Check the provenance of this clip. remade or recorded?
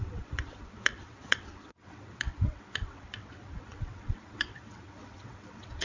remade